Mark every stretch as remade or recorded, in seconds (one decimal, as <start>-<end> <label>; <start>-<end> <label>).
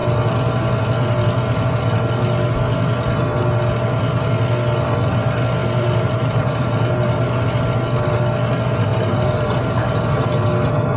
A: 0.0-5.6 recorded; 5.6-7.4 remade; 7.4-8.9 recorded; 8.9-10.2 remade; 10.2-11.0 recorded